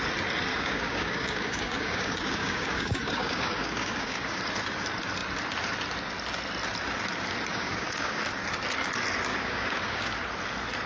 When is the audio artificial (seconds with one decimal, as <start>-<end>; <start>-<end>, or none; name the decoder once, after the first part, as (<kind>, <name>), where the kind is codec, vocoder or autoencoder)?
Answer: 0.5-4.4 (codec, DAC); 7.5-8.2; 9.3-10.1